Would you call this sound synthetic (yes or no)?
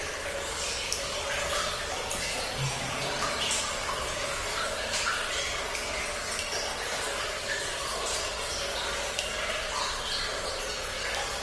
no